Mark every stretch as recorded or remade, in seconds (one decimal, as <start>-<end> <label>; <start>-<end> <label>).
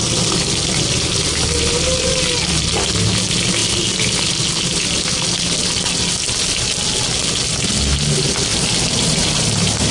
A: 0.0-8.5 recorded; 8.5-9.9 remade